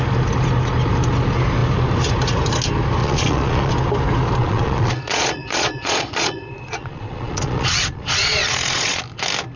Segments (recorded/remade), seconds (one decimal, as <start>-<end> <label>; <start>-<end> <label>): 0.0-3.0 recorded; 3.0-3.7 remade; 3.7-4.4 recorded; 4.4-9.0 remade; 9.0-9.6 recorded